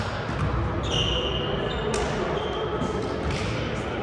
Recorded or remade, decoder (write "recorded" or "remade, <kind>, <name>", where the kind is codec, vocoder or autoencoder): recorded